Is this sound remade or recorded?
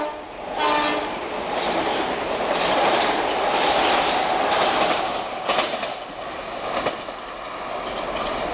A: recorded